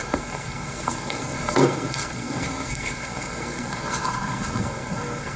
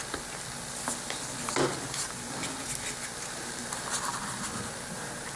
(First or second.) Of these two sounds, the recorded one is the second